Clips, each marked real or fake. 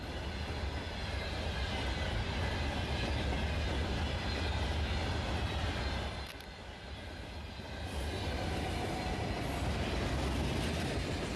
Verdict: real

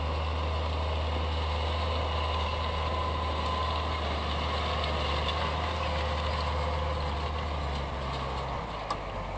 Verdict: real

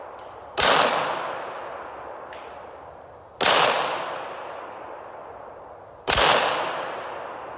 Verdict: real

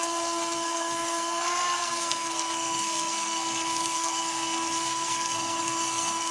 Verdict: fake